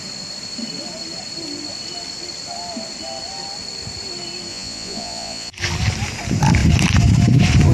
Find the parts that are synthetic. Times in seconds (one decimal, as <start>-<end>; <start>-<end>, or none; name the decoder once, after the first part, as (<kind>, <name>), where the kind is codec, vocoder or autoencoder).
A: 4.5-5.5 (vocoder, Vocos)